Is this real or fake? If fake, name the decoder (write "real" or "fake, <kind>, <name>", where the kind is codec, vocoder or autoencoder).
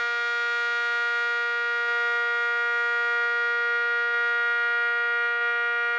real